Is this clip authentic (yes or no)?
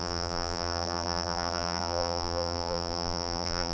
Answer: no